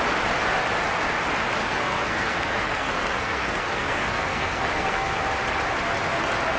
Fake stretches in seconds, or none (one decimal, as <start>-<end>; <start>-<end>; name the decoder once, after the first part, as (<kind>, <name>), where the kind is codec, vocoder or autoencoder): 1.6-5.2 (codec, SNAC)